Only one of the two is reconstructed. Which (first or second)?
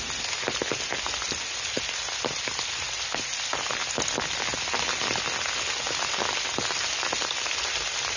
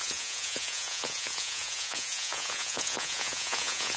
second